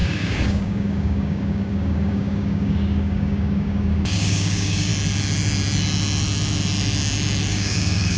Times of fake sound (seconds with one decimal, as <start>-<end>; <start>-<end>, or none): 0.0-4.9; 7.5-8.2